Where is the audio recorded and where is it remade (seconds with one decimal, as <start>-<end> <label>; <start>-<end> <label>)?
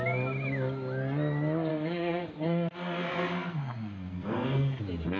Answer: 0.0-1.7 recorded; 1.7-4.8 remade; 4.8-5.2 recorded